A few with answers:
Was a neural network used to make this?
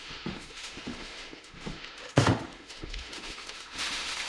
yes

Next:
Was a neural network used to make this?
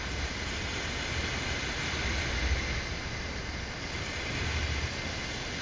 no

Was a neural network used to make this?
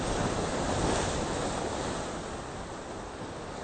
no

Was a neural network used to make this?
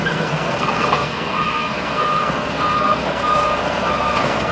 yes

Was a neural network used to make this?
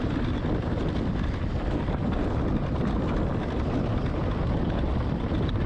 no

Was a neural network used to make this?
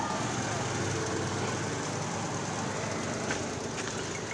no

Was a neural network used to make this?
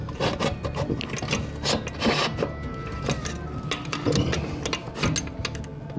no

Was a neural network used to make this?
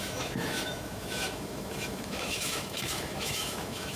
yes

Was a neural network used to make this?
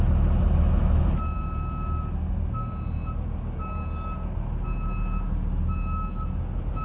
no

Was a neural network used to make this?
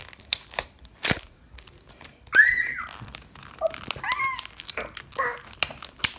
no